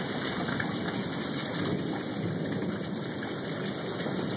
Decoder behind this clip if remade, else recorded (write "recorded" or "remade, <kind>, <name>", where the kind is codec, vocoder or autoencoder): recorded